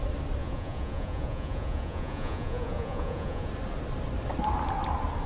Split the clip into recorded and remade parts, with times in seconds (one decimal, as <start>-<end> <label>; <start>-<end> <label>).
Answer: 0.0-0.4 recorded; 0.4-3.5 remade; 3.5-5.3 recorded